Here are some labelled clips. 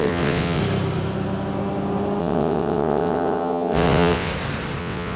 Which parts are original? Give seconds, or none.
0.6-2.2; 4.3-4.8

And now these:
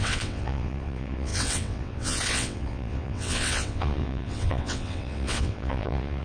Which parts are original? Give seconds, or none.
none

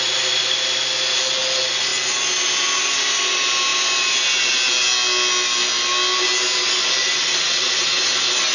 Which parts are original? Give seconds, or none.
0.0-7.0; 8.0-8.5

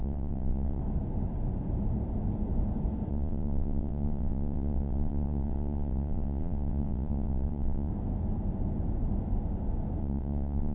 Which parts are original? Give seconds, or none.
0.8-3.1; 7.9-10.0